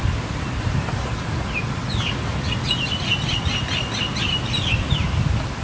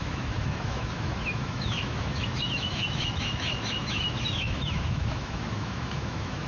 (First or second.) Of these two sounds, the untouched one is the first